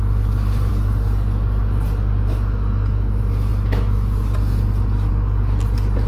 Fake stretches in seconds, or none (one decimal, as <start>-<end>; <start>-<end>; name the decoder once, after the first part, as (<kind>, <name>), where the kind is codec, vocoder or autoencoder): none